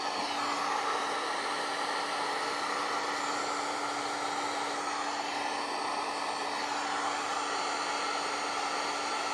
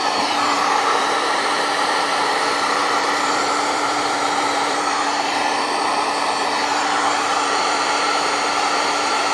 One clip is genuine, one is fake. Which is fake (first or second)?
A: second